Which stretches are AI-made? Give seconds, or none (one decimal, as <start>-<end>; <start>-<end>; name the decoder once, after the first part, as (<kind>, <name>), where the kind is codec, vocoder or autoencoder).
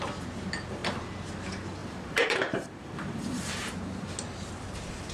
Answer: 1.8-3.7 (vocoder, BigVGAN v2)